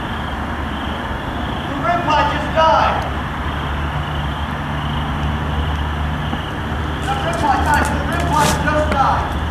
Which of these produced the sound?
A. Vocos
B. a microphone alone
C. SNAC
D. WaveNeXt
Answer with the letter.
B